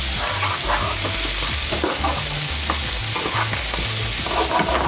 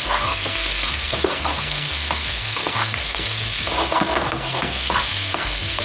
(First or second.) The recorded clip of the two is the first